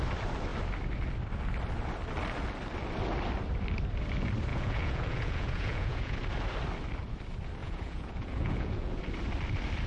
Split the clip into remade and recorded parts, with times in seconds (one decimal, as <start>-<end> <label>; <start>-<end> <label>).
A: 0.0-4.5 recorded; 4.5-6.2 remade; 6.2-7.6 recorded; 7.6-9.0 remade; 9.0-9.9 recorded